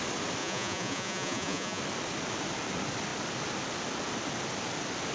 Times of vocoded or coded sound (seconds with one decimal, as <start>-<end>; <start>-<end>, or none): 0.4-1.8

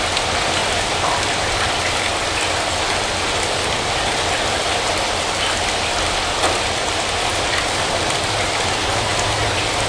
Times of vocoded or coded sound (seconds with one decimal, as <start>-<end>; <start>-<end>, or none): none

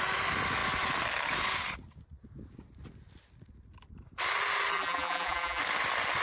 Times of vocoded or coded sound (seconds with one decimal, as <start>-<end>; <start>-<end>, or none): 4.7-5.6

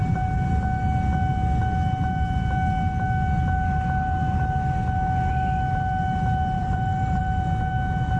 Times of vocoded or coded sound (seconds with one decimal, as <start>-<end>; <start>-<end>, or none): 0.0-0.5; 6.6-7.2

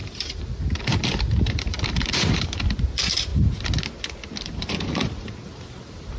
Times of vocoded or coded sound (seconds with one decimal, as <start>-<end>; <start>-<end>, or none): 0.0-3.3; 4.4-6.2

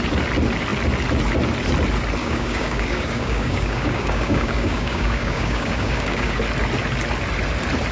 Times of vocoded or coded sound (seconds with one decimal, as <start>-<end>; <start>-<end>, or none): 2.2-6.4